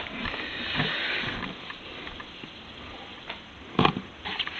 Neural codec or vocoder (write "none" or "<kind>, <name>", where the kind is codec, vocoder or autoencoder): none